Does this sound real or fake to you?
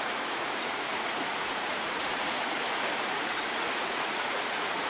fake